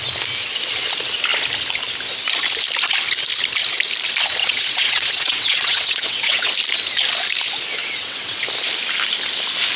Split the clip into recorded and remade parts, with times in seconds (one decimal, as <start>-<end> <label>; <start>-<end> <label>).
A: 0.0-4.4 recorded; 4.4-6.5 remade; 6.5-7.8 recorded; 7.8-8.4 remade; 8.4-9.8 recorded

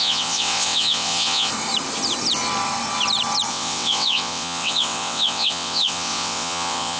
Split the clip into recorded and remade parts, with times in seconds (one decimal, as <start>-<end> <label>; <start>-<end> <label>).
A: 0.0-1.5 remade; 1.5-3.5 recorded; 3.5-7.0 remade

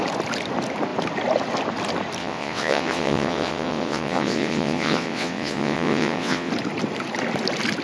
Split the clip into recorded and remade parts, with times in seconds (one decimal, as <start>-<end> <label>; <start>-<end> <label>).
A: 0.0-2.2 recorded; 2.2-6.5 remade; 6.5-7.8 recorded

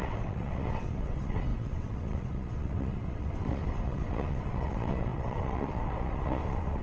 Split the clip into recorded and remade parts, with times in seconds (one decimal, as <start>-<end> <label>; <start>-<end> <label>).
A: 0.0-6.8 remade

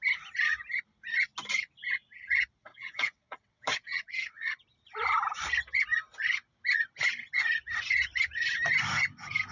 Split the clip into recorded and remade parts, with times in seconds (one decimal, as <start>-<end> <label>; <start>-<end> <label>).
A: 0.0-2.6 recorded; 2.6-4.5 remade; 4.5-9.5 recorded